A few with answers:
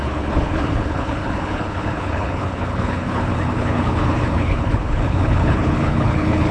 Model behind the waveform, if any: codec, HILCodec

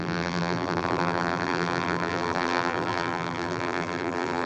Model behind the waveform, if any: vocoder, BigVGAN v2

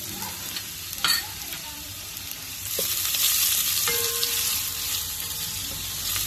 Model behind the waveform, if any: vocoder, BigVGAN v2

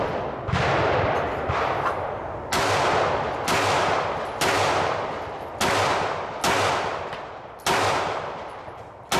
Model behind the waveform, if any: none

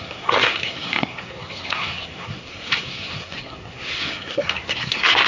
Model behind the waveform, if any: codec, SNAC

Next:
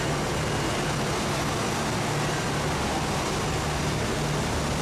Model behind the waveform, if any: none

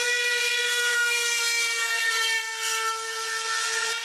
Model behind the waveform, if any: codec, SNAC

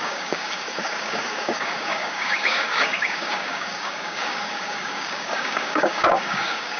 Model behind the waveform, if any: codec, DAC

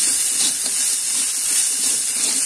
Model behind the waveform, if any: none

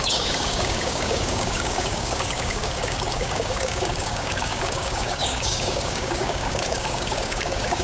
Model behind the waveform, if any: codec, DAC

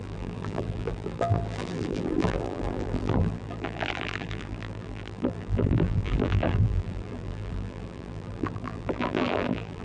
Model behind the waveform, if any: vocoder, BigVGAN v2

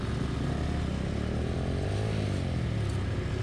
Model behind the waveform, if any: none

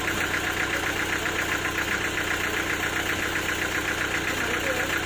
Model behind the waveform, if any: none